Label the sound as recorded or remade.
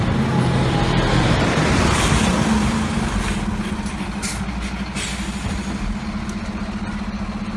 recorded